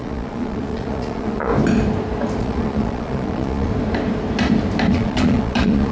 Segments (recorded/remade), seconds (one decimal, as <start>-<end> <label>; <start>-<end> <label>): 0.0-1.5 remade; 1.5-2.4 recorded; 2.4-3.7 remade; 3.7-4.9 recorded; 4.9-5.9 remade